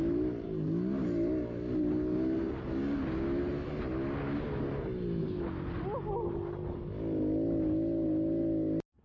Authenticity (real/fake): real